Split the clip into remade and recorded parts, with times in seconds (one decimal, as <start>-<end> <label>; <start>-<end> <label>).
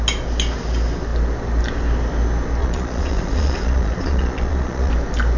0.0-2.6 recorded; 2.6-4.9 remade; 4.9-5.4 recorded